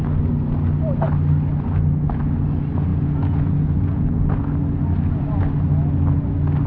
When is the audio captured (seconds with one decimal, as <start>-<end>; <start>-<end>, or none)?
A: 0.0-2.9; 4.3-6.7